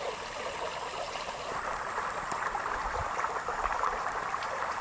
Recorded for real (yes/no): yes